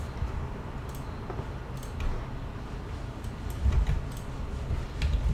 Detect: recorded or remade recorded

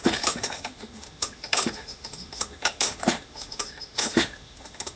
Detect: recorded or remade remade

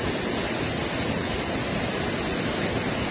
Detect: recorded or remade recorded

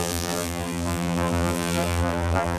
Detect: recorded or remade remade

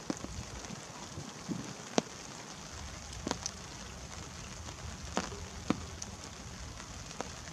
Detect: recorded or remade recorded